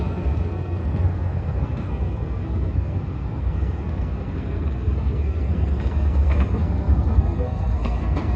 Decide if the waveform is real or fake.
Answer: fake